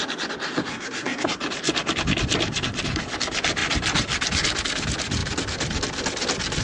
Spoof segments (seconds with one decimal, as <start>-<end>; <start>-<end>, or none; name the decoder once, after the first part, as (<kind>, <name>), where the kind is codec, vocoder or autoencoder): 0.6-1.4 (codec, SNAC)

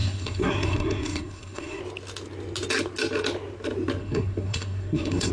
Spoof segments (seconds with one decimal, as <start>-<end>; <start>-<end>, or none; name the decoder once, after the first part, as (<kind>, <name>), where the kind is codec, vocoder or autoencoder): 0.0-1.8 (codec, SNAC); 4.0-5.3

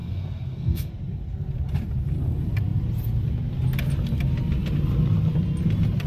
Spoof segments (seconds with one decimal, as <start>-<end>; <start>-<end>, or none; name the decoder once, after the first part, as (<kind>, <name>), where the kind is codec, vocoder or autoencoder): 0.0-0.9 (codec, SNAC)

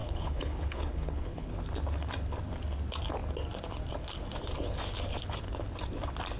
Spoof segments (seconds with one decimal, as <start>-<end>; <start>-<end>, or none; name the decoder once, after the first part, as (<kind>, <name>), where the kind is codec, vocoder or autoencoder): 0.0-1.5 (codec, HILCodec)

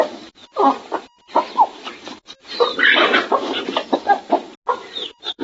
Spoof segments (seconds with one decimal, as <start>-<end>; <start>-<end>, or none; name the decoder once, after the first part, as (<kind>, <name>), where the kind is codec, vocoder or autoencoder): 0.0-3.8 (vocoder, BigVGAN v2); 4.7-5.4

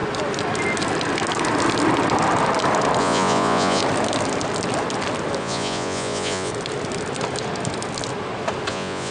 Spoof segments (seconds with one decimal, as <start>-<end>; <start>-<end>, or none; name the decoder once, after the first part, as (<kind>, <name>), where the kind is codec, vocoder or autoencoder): 3.0-3.8 (vocoder, Vocos); 5.4-6.5; 8.7-9.1

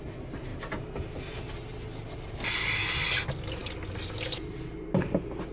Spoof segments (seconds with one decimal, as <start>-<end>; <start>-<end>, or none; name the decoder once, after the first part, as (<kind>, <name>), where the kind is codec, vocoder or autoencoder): none